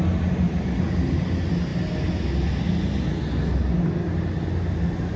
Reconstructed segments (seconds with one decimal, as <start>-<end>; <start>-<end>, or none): none